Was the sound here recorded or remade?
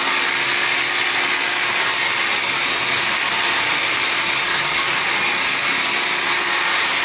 recorded